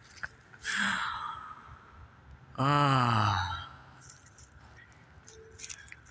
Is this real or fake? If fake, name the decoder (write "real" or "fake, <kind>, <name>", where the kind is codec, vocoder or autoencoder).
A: real